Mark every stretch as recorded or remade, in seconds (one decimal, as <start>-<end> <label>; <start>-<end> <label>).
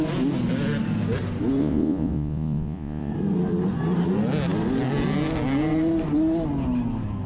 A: 0.0-1.6 recorded; 1.6-3.1 remade; 3.1-7.3 recorded